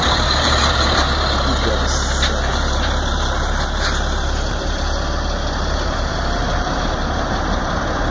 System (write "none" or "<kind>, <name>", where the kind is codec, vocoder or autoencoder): vocoder, BigVGAN v2